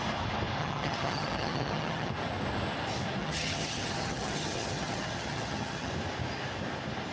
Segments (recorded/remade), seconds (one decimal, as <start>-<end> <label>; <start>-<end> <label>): 0.0-0.6 recorded; 0.6-2.1 remade; 2.1-3.2 recorded; 3.2-5.9 remade; 5.9-7.1 recorded